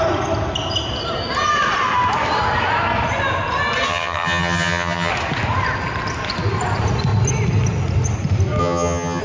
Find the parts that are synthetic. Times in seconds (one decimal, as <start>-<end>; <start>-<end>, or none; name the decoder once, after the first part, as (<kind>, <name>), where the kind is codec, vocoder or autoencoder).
3.9-5.1 (vocoder, HiFi-GAN); 8.6-9.2